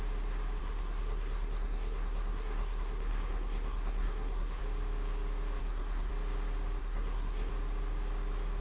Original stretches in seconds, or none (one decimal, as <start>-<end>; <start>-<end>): 0.0-0.6; 4.6-5.6; 6.1-6.8; 7.5-8.6